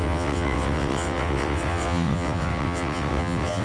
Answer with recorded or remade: remade